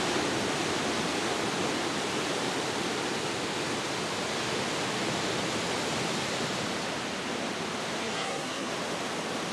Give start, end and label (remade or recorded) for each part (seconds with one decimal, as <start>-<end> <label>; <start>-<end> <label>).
0.0-8.0 recorded; 8.0-8.7 remade; 8.7-9.5 recorded